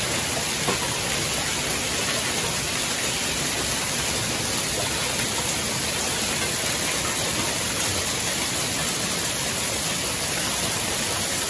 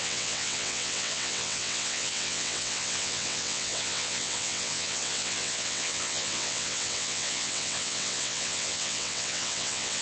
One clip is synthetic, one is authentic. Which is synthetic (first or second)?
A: second